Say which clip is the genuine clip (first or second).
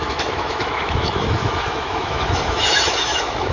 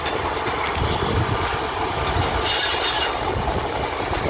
second